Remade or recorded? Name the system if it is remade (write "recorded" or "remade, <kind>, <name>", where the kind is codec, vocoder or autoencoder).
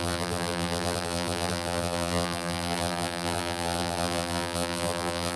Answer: remade, vocoder, BigVGAN v2